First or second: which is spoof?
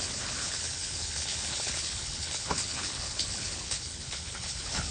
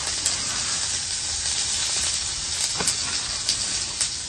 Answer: first